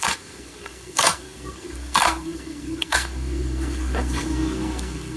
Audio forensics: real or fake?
fake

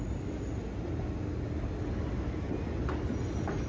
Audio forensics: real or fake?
real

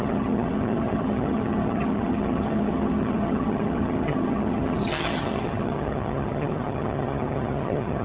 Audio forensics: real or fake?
fake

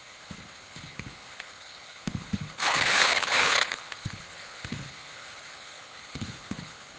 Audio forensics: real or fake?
fake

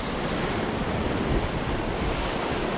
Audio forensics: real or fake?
real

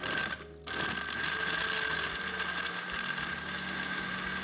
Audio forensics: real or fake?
real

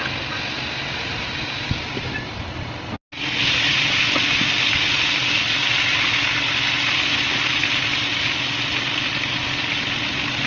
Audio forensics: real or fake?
real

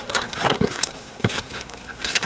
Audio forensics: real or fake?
fake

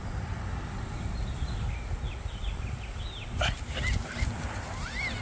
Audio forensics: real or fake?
real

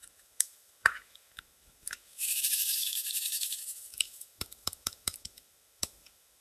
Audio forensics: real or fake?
fake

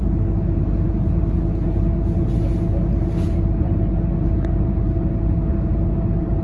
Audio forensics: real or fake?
real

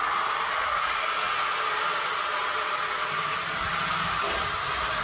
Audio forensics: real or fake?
real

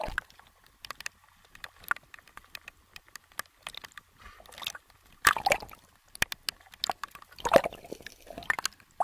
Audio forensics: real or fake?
real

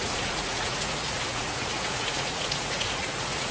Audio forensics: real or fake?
fake